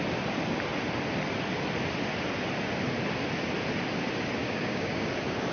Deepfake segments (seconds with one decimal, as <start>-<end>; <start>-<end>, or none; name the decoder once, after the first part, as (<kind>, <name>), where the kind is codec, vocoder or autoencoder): 4.4-5.1 (codec, DAC)